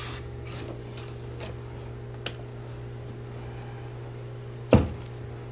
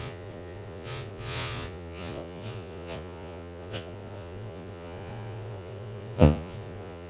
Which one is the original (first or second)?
first